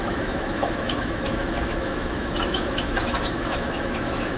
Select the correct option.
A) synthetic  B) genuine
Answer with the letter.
A